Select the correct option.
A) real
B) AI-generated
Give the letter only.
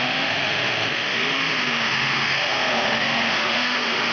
B